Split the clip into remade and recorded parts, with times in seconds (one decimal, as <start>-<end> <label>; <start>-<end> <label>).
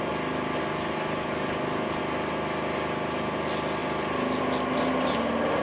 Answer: 0.0-0.6 recorded; 0.6-2.0 remade; 2.0-5.6 recorded